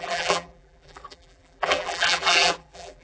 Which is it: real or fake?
fake